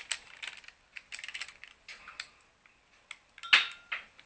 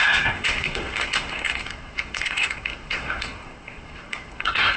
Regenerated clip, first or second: second